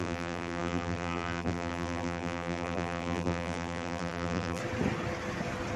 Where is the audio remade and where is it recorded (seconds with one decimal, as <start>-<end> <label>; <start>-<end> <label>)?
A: 0.0-4.6 remade; 4.6-5.8 recorded

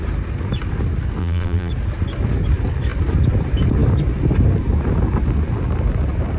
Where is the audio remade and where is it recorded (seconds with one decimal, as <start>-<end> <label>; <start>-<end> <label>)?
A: 0.0-1.2 recorded; 1.2-1.7 remade; 1.7-6.4 recorded

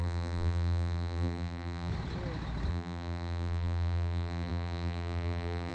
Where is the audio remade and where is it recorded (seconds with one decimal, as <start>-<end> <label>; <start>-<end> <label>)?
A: 0.0-1.9 remade; 1.9-2.7 recorded; 2.7-5.7 remade

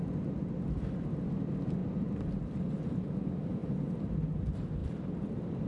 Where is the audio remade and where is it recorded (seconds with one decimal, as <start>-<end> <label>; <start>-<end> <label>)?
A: 0.0-1.8 recorded; 1.8-3.1 remade; 3.1-3.6 recorded; 3.6-4.2 remade; 4.2-4.8 recorded; 4.8-5.7 remade

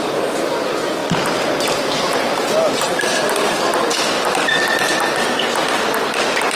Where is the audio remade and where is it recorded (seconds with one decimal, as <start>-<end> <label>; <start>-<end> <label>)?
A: 0.0-6.6 recorded